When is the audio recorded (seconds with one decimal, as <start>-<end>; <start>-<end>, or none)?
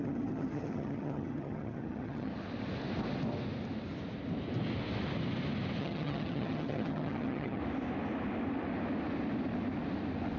2.3-5.8; 7.6-10.4